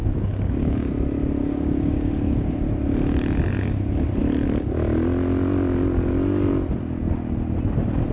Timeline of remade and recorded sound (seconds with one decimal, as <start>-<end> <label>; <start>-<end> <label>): 0.0-0.9 remade; 0.9-1.4 recorded; 1.4-2.6 remade; 2.6-8.1 recorded